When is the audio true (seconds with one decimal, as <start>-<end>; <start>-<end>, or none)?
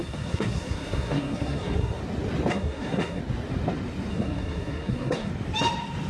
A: 2.0-2.5; 3.2-4.1; 5.3-6.1